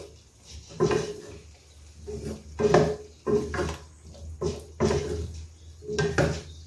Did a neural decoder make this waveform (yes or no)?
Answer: no